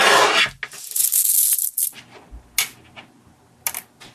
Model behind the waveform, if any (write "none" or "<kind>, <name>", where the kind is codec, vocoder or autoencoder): none